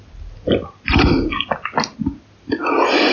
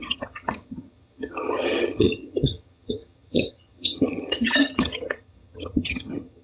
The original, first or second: first